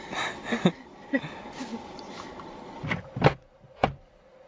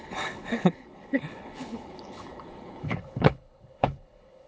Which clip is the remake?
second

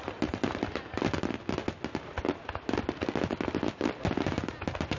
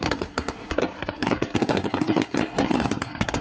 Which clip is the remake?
second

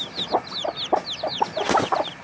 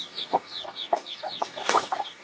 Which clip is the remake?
second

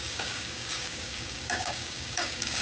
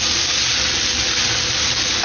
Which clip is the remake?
first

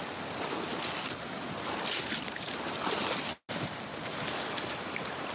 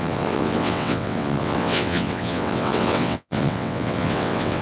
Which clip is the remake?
second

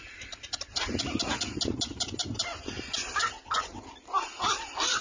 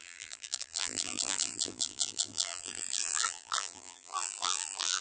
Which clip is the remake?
second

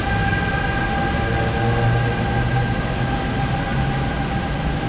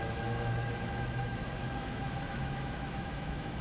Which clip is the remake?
second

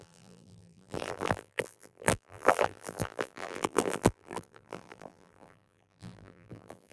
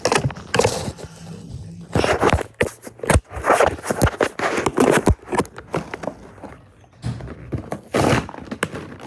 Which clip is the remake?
first